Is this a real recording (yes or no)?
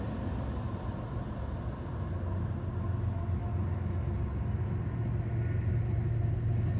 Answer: yes